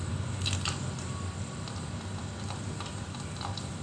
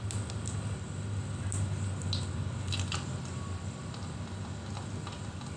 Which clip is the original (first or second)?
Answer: second